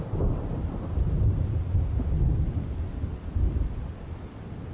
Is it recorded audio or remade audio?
recorded